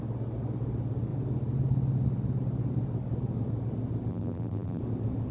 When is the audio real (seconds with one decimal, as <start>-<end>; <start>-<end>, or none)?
0.0-4.1; 4.8-5.3